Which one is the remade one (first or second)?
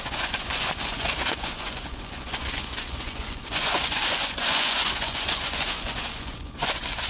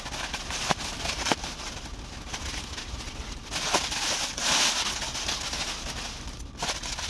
first